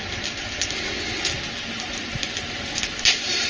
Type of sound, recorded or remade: recorded